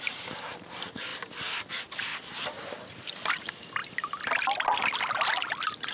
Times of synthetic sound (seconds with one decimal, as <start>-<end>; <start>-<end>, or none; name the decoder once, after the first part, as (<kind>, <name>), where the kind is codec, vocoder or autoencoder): none